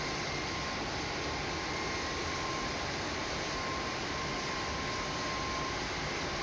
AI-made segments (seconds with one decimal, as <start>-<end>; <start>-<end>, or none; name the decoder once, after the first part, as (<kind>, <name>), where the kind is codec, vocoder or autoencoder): 2.2-4.3 (vocoder, BigVGAN v2)